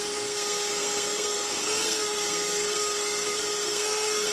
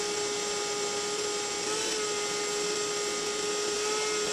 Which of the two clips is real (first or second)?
second